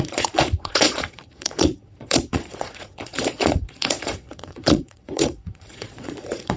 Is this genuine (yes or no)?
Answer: no